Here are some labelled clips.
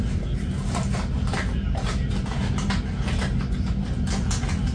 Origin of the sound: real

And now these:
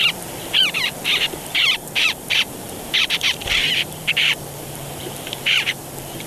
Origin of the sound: fake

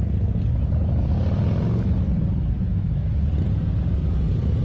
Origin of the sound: real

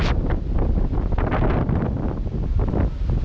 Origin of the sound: real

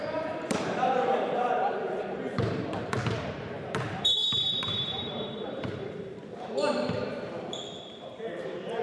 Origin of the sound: fake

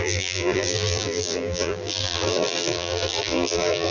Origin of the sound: fake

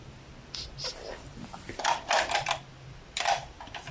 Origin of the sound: fake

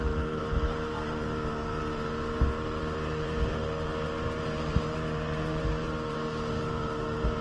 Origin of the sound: fake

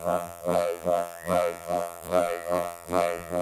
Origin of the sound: fake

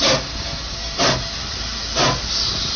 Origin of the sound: real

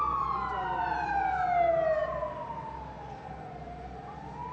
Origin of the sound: fake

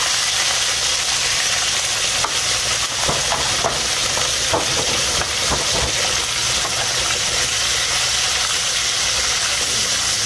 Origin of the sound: real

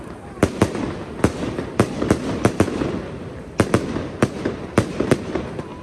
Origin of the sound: real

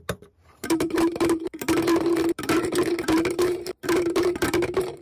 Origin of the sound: fake